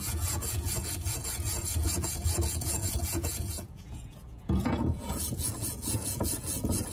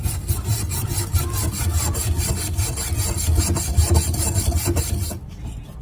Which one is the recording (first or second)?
second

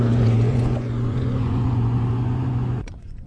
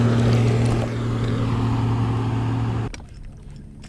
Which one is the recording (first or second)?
second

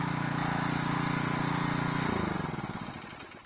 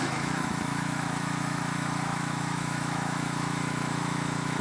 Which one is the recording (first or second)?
first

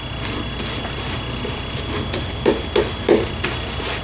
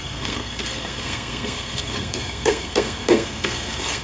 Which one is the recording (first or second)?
first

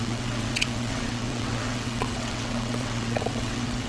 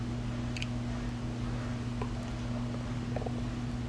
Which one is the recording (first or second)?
second